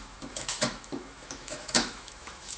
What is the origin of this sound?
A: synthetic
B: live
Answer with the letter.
A